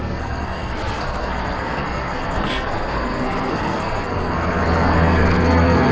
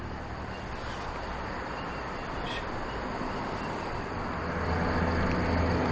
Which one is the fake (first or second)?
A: first